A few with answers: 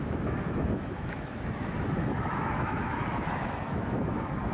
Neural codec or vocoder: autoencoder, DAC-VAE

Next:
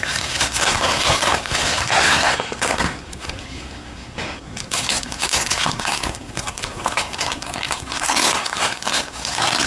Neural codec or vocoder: codec, SNAC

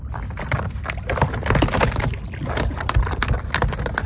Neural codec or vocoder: none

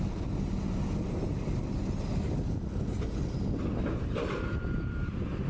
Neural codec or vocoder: none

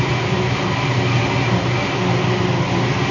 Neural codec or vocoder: none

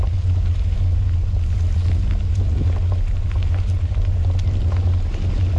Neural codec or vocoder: none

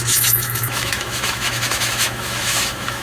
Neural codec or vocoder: autoencoder, DAC-VAE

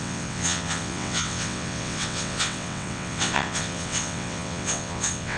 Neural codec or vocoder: vocoder, WaveNeXt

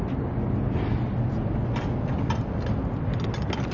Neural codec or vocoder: none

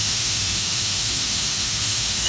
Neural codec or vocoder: autoencoder, DAC-VAE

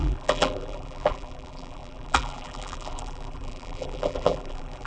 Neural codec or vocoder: vocoder, BigVGAN v2